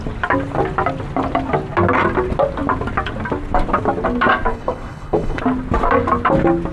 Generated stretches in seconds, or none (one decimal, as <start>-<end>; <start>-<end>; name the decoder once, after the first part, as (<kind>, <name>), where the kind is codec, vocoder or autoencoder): 4.5-5.4 (codec, HILCodec)